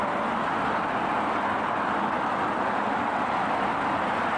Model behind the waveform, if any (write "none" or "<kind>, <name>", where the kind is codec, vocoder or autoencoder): none